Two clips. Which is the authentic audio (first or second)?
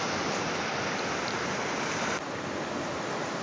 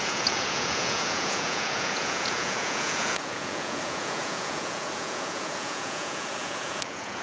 first